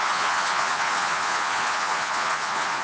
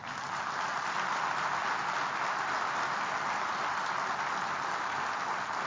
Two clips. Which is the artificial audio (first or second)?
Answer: first